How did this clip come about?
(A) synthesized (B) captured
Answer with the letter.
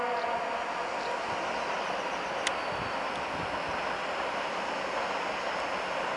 B